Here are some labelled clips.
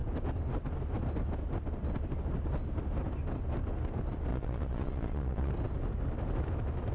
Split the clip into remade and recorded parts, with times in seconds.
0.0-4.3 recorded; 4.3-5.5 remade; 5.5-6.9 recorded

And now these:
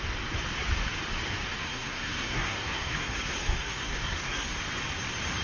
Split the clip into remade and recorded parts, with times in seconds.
0.0-1.6 recorded; 1.6-4.5 remade; 4.5-5.4 recorded

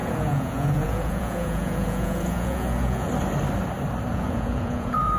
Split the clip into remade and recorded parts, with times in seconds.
0.0-3.1 remade; 3.1-4.1 recorded; 4.1-5.2 remade

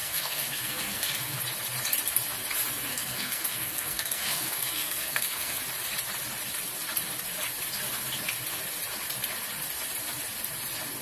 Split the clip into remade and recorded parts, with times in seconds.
0.0-1.4 remade; 1.4-2.9 recorded; 2.9-5.6 remade; 5.6-11.0 recorded

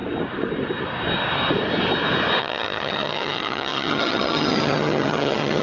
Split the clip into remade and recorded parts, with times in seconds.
0.0-2.4 recorded; 2.4-5.6 remade

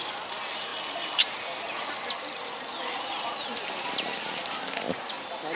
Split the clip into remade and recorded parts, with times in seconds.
0.0-5.6 recorded

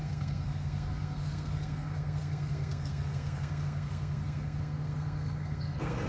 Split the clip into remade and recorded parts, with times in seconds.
0.0-6.1 remade